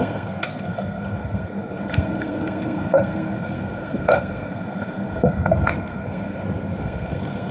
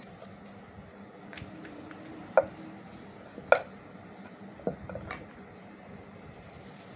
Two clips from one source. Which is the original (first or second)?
second